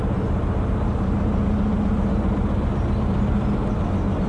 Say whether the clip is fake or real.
fake